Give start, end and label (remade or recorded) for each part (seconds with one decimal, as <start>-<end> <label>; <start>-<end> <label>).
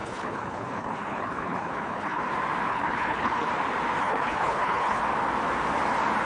0.0-2.2 remade; 2.2-2.7 recorded; 2.7-3.5 remade; 3.5-4.0 recorded; 4.0-5.0 remade; 5.0-6.2 recorded